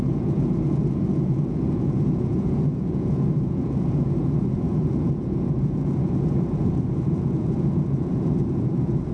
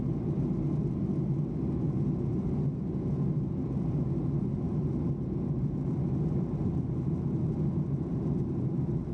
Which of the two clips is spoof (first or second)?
first